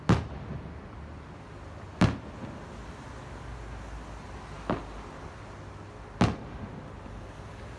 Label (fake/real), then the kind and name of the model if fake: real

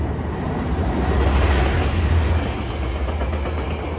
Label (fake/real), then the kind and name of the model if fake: real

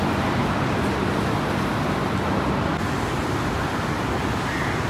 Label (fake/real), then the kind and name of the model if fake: real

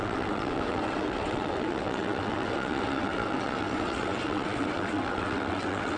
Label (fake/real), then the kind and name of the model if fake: fake, vocoder, WaveNeXt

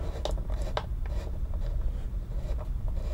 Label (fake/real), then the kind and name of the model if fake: real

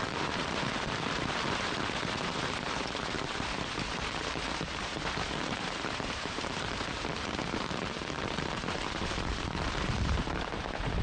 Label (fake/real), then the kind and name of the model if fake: fake, vocoder, BigVGAN v2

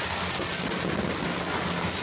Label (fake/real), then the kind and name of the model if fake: real